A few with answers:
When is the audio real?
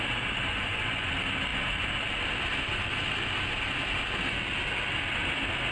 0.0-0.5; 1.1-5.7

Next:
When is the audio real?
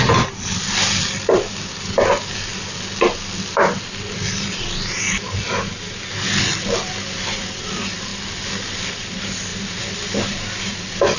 0.0-11.2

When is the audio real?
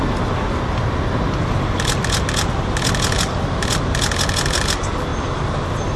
0.0-6.0